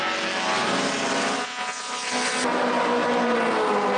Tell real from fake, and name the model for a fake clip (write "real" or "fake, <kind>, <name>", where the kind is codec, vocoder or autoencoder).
real